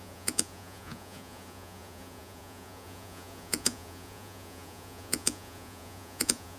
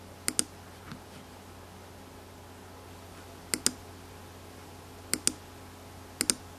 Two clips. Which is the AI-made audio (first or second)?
first